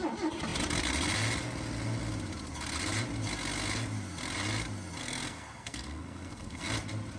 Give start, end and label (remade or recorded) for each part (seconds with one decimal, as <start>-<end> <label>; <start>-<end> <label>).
0.0-5.0 recorded; 5.0-6.7 remade; 6.7-7.2 recorded

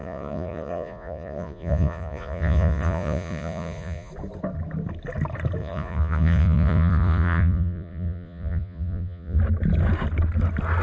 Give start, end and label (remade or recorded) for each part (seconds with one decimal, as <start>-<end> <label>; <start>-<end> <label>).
0.0-4.1 remade; 4.1-5.6 recorded; 5.6-9.4 remade; 9.4-10.8 recorded

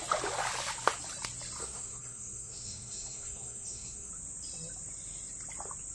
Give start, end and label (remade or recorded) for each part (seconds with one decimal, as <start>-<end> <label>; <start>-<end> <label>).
0.0-1.6 recorded; 1.6-4.1 remade; 4.1-5.9 recorded

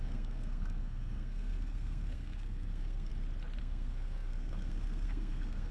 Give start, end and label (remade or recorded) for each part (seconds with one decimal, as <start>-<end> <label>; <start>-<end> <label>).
0.0-3.1 remade; 3.1-3.6 recorded; 3.6-5.7 remade